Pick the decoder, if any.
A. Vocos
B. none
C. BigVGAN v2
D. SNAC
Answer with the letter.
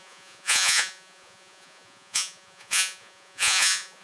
A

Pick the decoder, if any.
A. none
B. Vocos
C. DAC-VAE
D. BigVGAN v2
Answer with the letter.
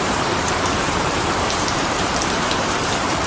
D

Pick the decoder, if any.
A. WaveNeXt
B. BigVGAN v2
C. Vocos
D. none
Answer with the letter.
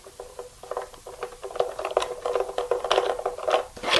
D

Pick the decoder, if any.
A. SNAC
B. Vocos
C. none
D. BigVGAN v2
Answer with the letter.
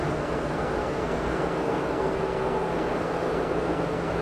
A